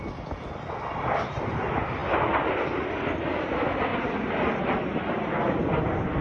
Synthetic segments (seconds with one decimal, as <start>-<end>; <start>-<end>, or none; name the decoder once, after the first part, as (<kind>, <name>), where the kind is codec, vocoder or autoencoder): none